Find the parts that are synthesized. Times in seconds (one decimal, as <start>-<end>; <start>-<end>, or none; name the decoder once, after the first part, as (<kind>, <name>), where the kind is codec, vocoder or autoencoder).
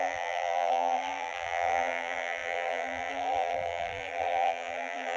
0.0-5.2 (vocoder, BigVGAN v2)